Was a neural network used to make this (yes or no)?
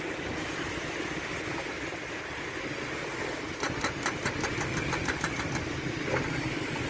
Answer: no